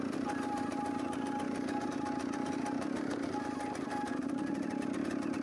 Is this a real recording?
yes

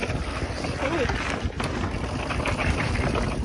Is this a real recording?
yes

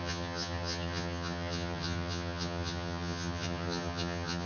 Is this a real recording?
no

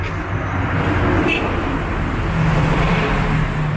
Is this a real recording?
yes